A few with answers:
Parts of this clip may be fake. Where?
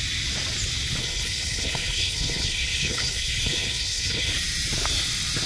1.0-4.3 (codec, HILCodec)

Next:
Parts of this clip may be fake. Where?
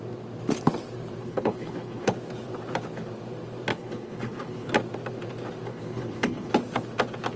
1.2-2.1 (codec, HILCodec); 3.7-4.7; 5.7-6.5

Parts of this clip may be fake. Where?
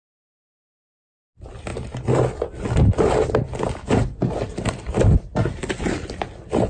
none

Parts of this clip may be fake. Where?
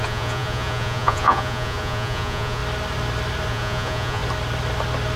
0.0-2.6 (vocoder, Vocos); 3.5-4.2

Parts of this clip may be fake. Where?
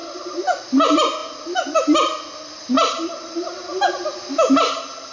none